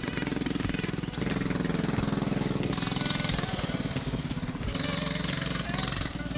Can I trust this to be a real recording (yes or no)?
yes